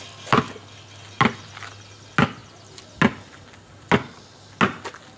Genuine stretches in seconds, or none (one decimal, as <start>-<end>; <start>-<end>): 0.0-5.2